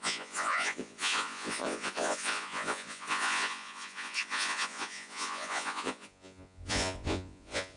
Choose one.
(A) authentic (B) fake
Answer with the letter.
B